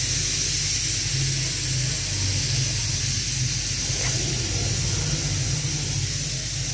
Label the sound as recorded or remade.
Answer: recorded